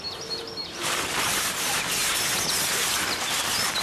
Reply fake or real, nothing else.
real